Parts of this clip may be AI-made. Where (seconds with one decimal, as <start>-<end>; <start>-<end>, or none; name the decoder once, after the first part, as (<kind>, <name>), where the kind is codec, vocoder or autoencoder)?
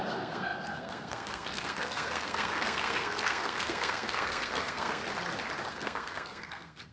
0.0-5.0 (codec, SNAC); 5.7-6.9